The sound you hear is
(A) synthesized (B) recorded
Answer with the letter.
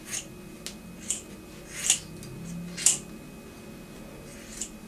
B